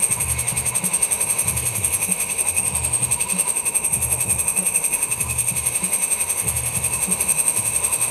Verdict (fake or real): fake